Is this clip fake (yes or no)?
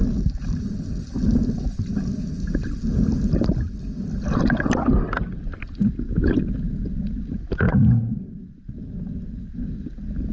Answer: no